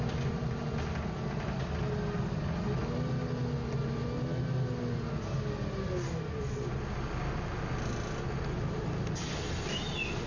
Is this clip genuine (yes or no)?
yes